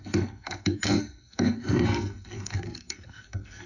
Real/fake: fake